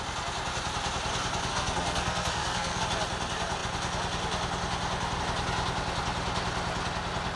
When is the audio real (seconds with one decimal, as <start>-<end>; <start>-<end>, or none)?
0.0-1.5; 2.8-7.4